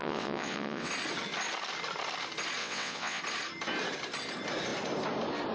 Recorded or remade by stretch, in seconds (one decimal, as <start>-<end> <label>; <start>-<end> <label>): 0.0-0.9 remade; 0.9-2.6 recorded; 2.6-3.2 remade; 3.2-5.5 recorded